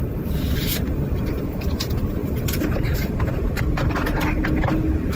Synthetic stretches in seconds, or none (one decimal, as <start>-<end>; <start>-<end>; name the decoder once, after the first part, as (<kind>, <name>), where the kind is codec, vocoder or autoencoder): 2.2-3.0 (vocoder, BigVGAN v2)